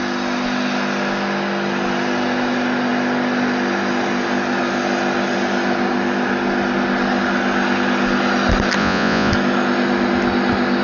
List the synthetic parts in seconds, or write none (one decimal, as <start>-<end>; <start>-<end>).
8.8-9.3